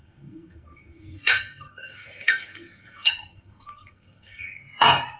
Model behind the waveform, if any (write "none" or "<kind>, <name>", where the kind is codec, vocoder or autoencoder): codec, SNAC